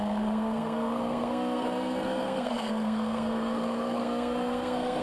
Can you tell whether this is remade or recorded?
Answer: remade